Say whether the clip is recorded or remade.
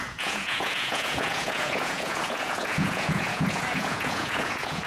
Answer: remade